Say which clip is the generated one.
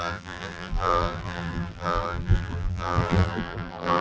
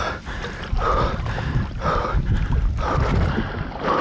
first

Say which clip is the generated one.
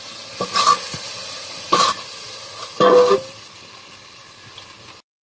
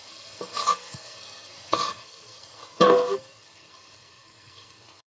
second